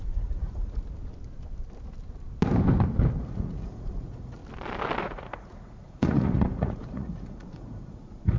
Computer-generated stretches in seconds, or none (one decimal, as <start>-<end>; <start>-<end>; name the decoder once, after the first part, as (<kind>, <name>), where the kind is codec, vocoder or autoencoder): 0.0-0.8 (vocoder, Vocos); 3.2-4.4; 5.0-8.4